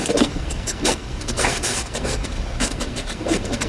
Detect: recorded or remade remade